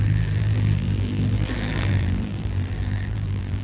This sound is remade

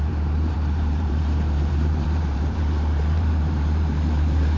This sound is remade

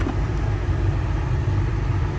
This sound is remade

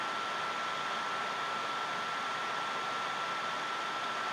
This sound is recorded